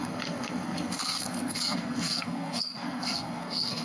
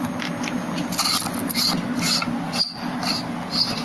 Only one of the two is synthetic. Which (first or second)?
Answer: first